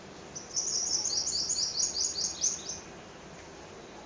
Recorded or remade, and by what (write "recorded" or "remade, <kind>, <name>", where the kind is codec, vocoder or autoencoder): recorded